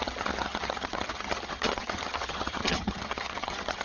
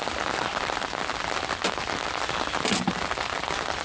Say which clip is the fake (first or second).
first